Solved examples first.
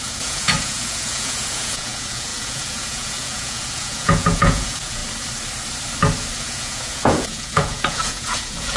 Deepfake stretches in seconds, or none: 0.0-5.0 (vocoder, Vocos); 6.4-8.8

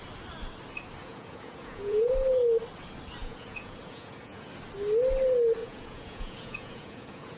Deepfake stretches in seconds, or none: 1.0-2.1 (vocoder, Vocos); 3.2-4.5; 5.6-7.4